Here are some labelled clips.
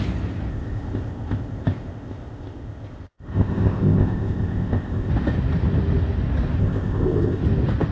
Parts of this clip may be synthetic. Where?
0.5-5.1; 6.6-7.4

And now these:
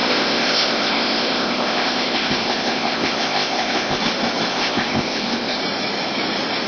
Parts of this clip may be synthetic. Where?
0.0-4.0; 4.5-5.6

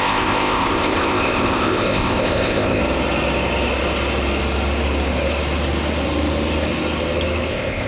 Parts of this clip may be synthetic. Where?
0.0-2.8; 7.5-7.9

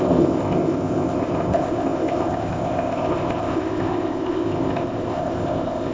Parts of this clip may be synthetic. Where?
0.0-5.9